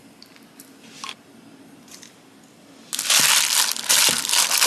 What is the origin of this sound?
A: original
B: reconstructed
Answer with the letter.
A